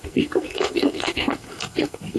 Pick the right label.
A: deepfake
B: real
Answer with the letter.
A